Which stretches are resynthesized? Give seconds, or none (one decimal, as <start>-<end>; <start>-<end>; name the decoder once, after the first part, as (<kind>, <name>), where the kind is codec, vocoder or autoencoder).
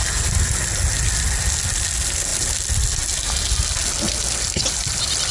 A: none